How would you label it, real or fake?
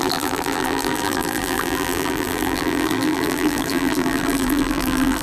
fake